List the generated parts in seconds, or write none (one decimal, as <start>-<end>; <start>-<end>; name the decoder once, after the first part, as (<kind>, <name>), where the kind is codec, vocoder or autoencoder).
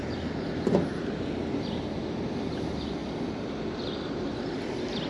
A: none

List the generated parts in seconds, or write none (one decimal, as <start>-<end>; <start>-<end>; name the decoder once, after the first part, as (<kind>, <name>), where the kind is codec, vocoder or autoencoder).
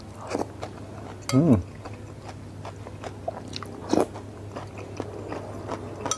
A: none